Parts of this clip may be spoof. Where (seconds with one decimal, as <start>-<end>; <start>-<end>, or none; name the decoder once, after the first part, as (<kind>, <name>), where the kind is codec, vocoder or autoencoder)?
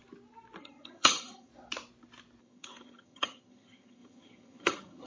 0.6-1.5 (vocoder, HiFi-GAN); 2.4-5.1